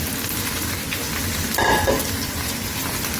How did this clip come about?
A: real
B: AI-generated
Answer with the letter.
A